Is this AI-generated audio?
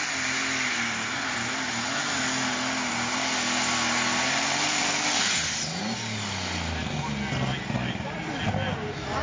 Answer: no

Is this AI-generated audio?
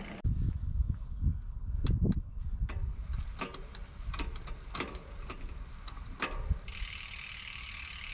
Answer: no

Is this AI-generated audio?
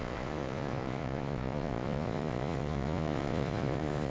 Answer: yes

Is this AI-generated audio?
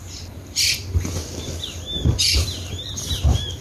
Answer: yes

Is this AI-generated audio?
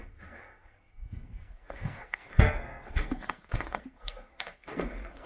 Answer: yes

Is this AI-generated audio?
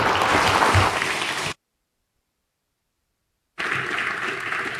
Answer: no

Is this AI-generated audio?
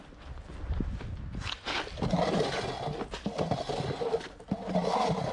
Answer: no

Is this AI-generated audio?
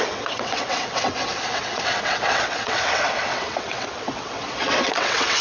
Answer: yes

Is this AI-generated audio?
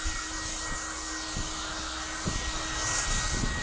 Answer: no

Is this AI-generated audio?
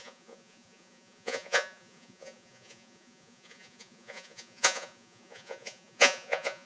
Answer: yes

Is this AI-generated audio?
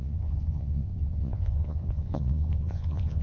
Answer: yes